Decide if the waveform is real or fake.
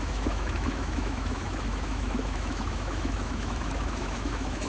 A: fake